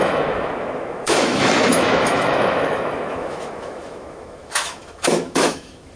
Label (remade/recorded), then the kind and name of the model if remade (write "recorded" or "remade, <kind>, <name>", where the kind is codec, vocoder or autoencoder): remade, autoencoder, DAC-VAE